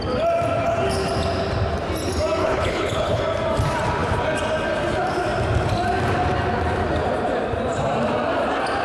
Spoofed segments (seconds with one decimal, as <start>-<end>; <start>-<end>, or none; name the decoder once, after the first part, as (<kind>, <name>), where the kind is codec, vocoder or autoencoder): 2.4-3.2 (codec, HILCodec)